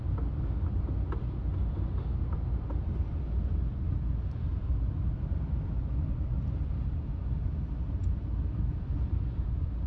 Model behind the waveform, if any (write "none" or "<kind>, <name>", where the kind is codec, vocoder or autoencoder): none